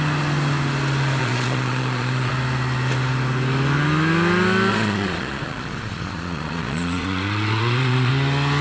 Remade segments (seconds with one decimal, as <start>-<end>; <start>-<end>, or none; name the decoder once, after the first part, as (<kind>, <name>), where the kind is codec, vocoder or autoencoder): 1.2-2.3 (vocoder, Vocos); 4.7-8.1